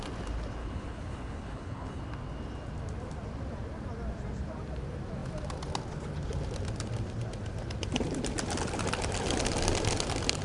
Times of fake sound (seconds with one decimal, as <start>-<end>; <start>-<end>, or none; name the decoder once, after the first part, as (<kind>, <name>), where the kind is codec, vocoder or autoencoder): 0.6-2.0 (codec, HILCodec)